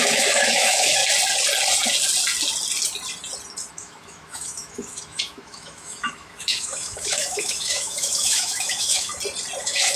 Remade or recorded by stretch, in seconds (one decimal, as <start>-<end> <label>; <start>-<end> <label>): 0.0-1.0 remade; 1.0-3.7 recorded; 3.7-9.1 remade; 9.1-9.6 recorded; 9.6-10.0 remade